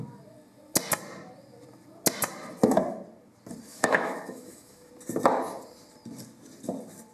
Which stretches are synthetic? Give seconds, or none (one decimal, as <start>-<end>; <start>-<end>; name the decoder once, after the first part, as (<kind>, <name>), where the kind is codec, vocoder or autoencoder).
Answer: 3.7-4.9 (autoencoder, DAC-VAE)